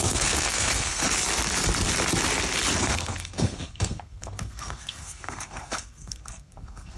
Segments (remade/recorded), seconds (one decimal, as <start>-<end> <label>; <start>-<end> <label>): 0.0-1.0 remade; 1.0-2.8 recorded; 2.8-7.0 remade